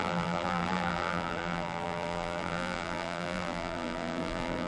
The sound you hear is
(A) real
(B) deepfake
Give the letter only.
B